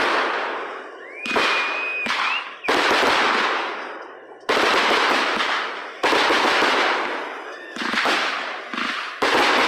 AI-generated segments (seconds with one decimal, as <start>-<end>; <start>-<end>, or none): none